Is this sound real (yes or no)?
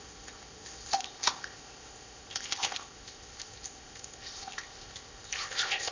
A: no